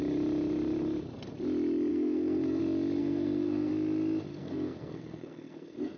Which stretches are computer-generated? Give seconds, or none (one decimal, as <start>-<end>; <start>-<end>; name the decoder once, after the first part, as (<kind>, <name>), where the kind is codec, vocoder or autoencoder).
1.9-2.6 (codec, SNAC); 3.0-3.7; 4.3-6.0